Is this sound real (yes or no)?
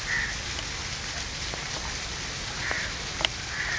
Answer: yes